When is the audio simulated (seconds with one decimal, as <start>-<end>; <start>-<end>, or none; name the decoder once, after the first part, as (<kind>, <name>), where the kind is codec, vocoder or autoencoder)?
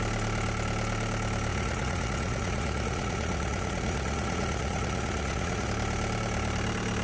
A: 1.5-5.7 (vocoder, Vocos)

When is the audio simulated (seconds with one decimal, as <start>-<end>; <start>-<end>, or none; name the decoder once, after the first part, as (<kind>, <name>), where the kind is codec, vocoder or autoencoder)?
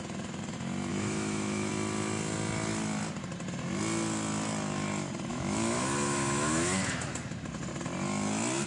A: 0.9-1.7 (autoencoder, DAC-VAE); 5.3-7.1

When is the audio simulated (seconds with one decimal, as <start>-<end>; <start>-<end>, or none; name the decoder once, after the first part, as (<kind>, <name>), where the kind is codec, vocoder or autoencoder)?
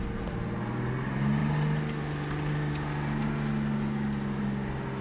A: none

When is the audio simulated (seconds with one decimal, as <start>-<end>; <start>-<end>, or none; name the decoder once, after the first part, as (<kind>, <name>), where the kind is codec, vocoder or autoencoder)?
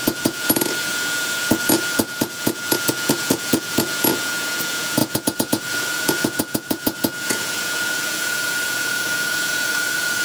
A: 0.0-10.2 (vocoder, Vocos)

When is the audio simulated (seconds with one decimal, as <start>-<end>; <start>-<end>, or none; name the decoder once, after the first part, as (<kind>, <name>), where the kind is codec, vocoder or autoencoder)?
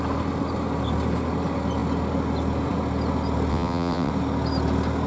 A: 3.5-4.1 (vocoder, WaveNeXt)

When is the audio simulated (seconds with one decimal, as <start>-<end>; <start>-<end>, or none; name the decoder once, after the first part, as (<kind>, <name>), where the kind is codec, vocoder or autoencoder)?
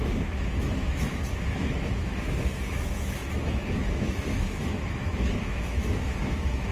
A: 0.0-6.7 (autoencoder, DAC-VAE)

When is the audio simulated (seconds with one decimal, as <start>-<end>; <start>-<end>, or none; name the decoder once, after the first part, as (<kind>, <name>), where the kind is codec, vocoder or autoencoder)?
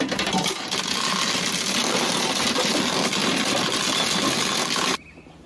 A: none